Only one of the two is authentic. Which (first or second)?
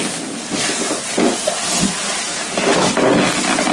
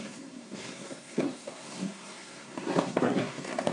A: first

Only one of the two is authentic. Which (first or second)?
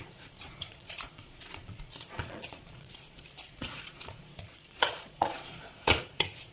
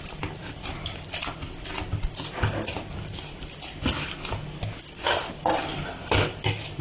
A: second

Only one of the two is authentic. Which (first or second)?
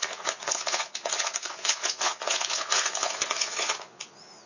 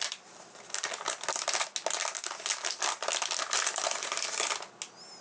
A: second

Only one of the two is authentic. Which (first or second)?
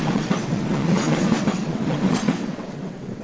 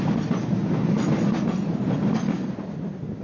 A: second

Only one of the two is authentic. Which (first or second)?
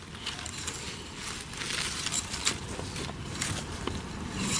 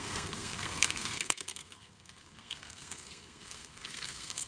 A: first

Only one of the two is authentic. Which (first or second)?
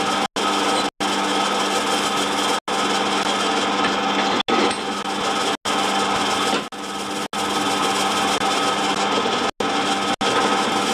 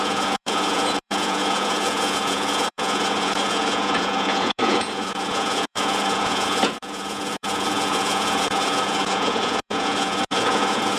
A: first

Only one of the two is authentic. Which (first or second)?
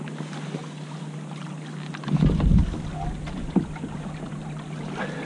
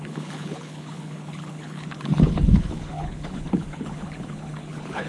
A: first